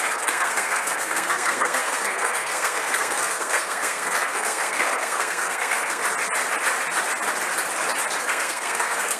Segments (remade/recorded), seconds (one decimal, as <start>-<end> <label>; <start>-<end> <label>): 0.0-6.0 remade; 6.0-8.2 recorded; 8.2-9.2 remade